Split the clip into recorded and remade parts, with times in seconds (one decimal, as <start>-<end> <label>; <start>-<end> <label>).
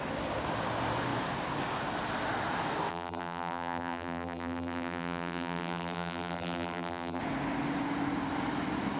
0.0-2.9 recorded; 2.9-7.2 remade; 7.2-9.0 recorded